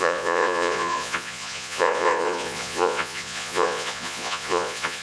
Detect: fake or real fake